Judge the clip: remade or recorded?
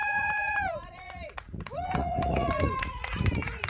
remade